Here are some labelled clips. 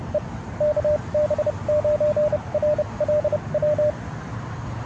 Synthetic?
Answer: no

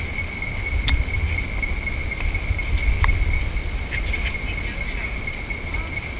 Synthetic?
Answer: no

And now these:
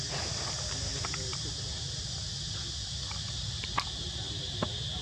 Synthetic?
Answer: no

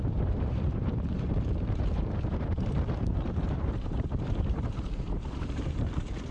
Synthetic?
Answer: yes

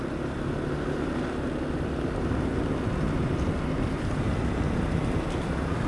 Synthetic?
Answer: no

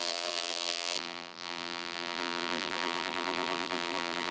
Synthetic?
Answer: yes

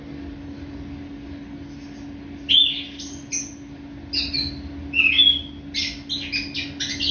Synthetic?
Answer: no